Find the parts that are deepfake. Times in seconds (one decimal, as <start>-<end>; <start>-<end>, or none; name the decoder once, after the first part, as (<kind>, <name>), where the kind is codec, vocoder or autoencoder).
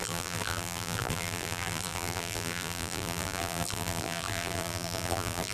0.0-5.5 (vocoder, BigVGAN v2)